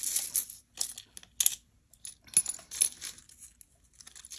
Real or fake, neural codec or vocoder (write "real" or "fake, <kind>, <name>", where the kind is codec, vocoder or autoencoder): real